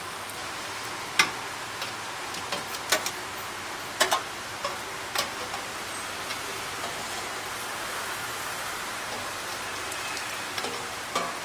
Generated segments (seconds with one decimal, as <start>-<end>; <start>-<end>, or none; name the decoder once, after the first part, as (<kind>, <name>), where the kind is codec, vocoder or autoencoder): none